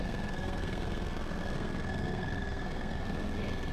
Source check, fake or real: fake